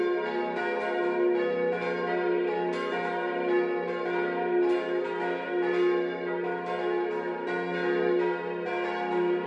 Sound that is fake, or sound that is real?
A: real